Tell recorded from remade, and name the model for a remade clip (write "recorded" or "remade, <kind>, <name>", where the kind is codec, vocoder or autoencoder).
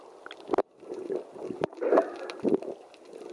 recorded